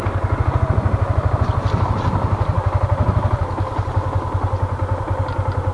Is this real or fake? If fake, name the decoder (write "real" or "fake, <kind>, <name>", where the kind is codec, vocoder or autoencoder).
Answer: real